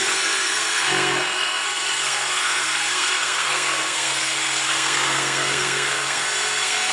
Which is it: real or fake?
fake